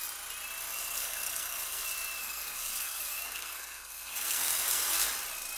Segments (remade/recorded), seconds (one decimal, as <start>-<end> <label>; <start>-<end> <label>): 0.0-0.8 recorded; 0.8-1.8 remade; 1.8-2.2 recorded; 2.2-5.1 remade; 5.1-5.6 recorded